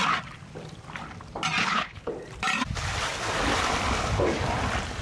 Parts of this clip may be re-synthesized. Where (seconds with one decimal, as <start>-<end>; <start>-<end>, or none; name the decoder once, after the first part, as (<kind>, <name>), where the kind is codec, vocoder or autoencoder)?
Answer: 1.6-2.1 (codec, HILCodec)